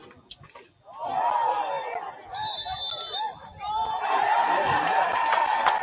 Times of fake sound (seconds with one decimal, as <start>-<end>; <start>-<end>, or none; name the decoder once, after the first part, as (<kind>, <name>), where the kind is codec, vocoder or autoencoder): 3.1-5.1 (vocoder, BigVGAN v2)